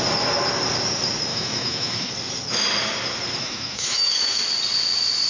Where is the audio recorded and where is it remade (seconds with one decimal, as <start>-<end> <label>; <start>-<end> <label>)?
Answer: 0.0-1.3 recorded; 1.3-2.1 remade; 2.1-3.4 recorded; 3.4-4.4 remade; 4.4-5.3 recorded